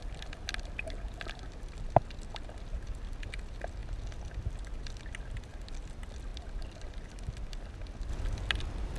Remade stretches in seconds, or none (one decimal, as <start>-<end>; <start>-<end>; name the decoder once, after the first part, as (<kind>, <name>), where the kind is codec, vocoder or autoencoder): 8.1-9.0 (vocoder, BigVGAN v2)